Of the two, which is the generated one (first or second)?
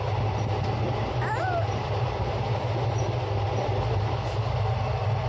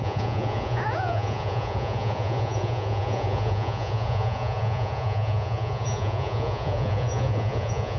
second